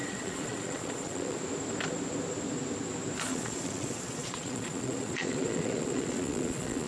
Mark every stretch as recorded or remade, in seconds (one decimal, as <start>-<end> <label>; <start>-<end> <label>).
0.0-1.4 remade; 1.4-3.3 recorded; 3.3-6.9 remade